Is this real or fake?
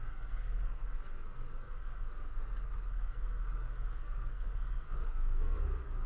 fake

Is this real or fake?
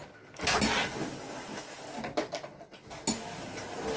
real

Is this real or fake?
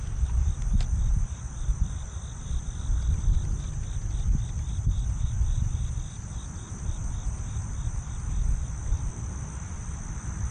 real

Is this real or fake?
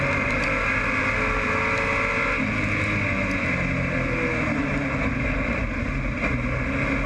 real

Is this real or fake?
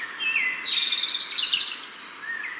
real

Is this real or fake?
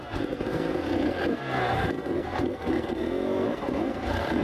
fake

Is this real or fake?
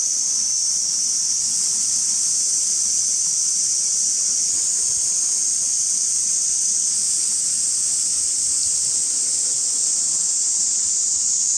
real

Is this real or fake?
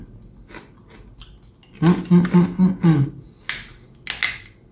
real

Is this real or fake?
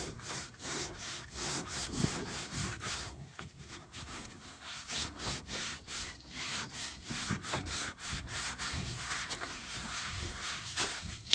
fake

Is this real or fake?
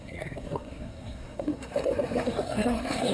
fake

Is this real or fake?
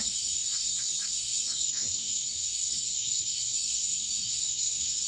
fake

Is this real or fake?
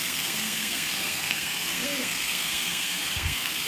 fake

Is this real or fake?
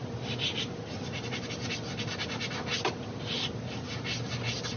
real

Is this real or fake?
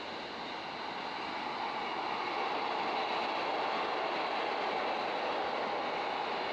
real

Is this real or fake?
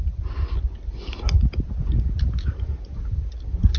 real